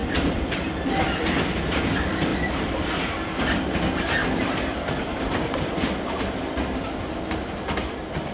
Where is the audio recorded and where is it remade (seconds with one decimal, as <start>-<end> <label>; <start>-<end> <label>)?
0.0-0.9 remade; 0.9-4.2 recorded; 4.2-7.1 remade; 7.1-8.3 recorded